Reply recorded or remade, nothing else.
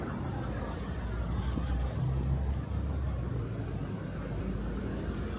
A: recorded